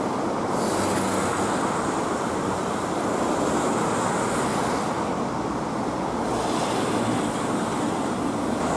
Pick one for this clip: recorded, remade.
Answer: recorded